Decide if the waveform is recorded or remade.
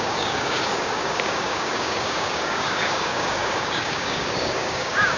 remade